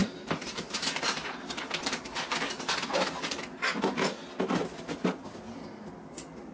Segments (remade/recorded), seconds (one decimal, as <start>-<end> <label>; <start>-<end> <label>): 0.0-1.6 remade; 1.6-6.5 recorded

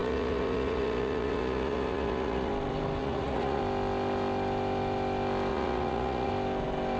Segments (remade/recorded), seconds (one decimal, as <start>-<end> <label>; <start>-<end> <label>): 0.0-2.5 remade; 2.5-3.0 recorded; 3.0-3.6 remade; 3.6-5.5 recorded; 5.5-6.3 remade; 6.3-7.0 recorded

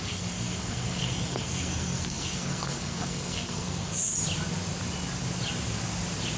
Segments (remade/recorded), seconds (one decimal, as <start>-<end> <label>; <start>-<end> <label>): 0.0-4.1 remade; 4.1-6.4 recorded

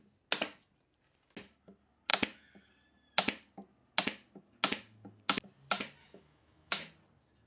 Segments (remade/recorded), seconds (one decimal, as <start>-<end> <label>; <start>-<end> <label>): 0.0-6.0 recorded; 6.0-6.8 remade; 6.8-7.5 recorded

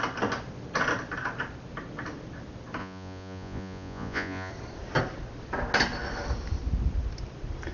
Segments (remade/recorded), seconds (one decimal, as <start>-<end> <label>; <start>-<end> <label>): 0.0-2.8 recorded; 2.8-4.5 remade; 4.5-7.7 recorded

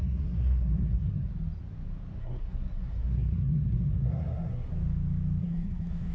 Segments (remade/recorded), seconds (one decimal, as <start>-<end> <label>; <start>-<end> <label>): 0.0-1.3 remade; 1.3-2.2 recorded; 2.2-4.7 remade; 4.7-5.4 recorded; 5.4-6.1 remade

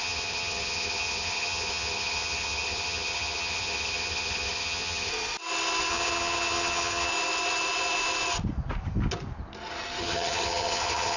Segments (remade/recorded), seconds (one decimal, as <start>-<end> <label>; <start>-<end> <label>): 0.0-5.1 remade; 5.1-5.9 recorded; 5.9-7.1 remade; 7.1-10.0 recorded; 10.0-11.2 remade

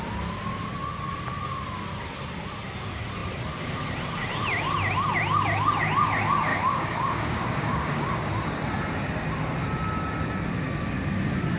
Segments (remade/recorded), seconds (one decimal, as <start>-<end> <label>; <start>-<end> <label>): 0.0-6.5 recorded; 6.5-8.3 remade; 8.3-11.6 recorded